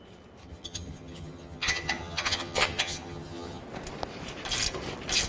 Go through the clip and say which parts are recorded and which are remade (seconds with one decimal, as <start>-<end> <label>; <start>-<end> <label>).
0.0-0.4 recorded; 0.4-3.6 remade; 3.6-5.3 recorded